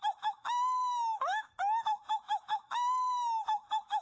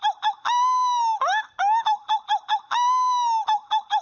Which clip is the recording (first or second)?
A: second